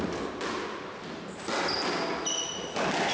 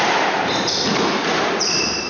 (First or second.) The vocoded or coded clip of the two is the second